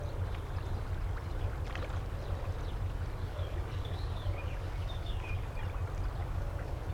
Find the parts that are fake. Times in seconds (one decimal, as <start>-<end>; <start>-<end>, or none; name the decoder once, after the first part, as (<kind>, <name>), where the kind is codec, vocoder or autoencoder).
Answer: 3.2-5.5 (codec, DAC); 6.2-6.9